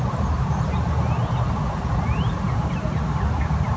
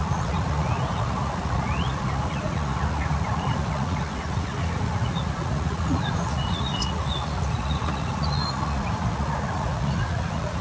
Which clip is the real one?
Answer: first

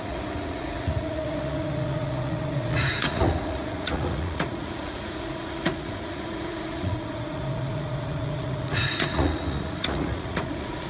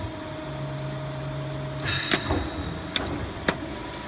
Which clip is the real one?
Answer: second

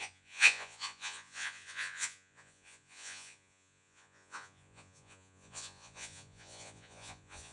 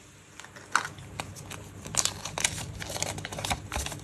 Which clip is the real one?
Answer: second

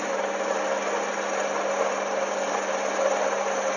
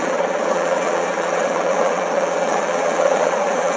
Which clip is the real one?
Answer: first